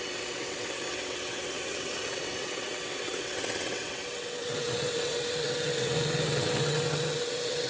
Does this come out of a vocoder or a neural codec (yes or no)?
yes